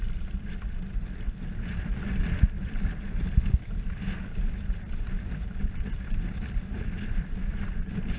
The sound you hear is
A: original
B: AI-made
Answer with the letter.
A